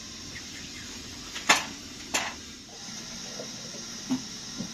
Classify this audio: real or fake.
real